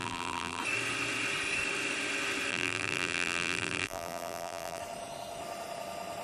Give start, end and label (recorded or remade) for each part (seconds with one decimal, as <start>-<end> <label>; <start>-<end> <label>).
0.0-0.6 remade; 0.6-2.5 recorded; 2.5-4.8 remade; 4.8-6.2 recorded